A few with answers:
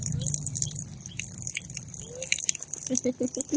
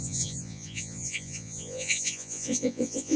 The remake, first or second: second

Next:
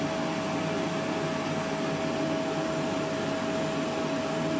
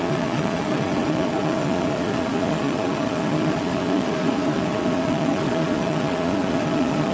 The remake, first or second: second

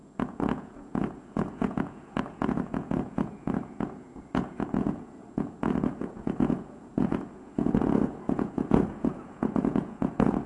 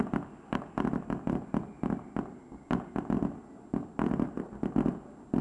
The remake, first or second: first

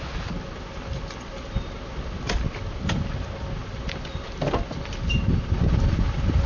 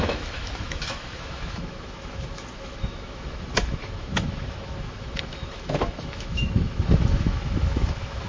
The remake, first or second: second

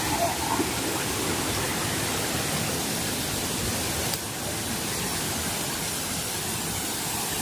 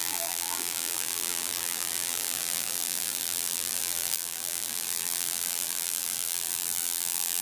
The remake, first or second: second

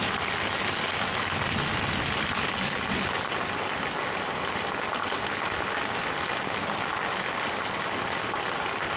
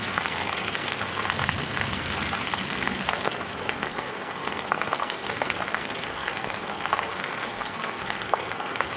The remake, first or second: second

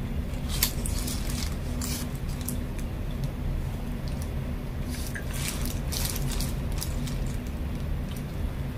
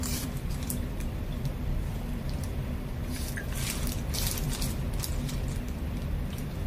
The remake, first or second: second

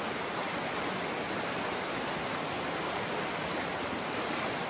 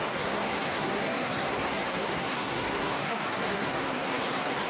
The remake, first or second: second